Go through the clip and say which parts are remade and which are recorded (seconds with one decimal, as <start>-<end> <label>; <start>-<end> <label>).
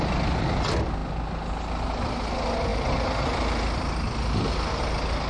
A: 0.0-5.3 recorded